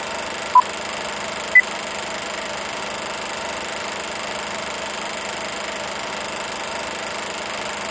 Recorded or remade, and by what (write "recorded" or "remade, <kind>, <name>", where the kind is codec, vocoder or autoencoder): recorded